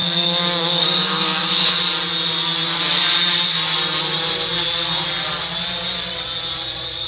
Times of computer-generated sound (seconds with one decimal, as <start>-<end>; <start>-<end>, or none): 0.0-1.8